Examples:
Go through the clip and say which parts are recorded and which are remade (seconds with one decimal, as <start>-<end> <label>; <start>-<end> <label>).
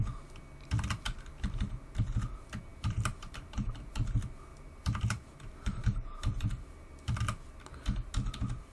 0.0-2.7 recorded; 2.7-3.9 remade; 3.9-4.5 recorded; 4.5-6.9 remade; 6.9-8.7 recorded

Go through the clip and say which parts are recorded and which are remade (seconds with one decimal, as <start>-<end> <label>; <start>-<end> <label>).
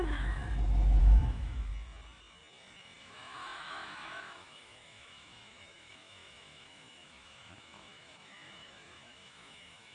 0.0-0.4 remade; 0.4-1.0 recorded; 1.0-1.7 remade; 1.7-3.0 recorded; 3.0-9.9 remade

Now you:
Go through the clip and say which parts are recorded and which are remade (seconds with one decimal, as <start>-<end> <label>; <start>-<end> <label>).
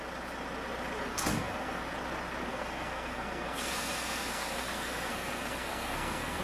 0.0-1.1 recorded; 1.1-1.8 remade; 1.8-2.5 recorded; 2.5-6.4 remade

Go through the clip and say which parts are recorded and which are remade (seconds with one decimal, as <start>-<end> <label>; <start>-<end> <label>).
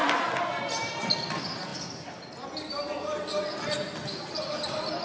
0.0-5.0 recorded